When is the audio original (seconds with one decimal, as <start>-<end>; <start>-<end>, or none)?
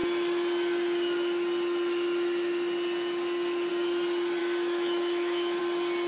0.0-4.4; 5.6-6.1